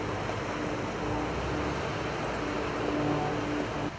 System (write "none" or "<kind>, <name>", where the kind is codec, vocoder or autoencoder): none